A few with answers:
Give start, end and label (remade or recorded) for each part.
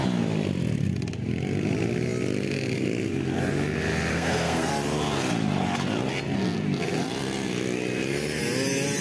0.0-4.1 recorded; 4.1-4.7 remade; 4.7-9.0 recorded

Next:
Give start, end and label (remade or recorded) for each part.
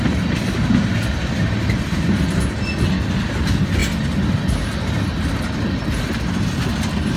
0.0-7.2 recorded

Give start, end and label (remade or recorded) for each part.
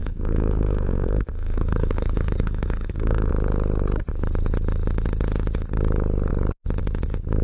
0.0-3.3 remade; 3.3-7.4 recorded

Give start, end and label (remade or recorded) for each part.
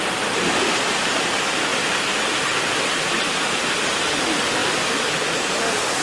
0.0-6.0 recorded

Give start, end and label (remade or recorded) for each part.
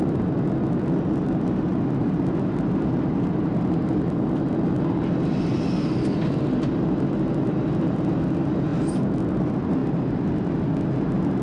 0.0-11.4 recorded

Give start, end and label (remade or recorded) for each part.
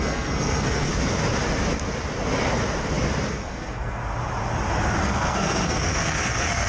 0.0-0.9 remade; 0.9-3.3 recorded; 3.3-4.0 remade; 4.0-5.0 recorded; 5.0-6.7 remade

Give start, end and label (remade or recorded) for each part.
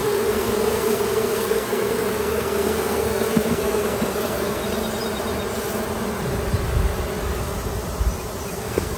0.0-4.6 remade; 4.6-8.5 recorded; 8.5-9.0 remade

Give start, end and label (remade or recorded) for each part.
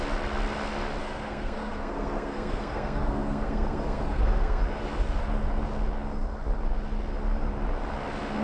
0.0-1.0 recorded; 1.0-4.6 remade; 4.6-8.4 recorded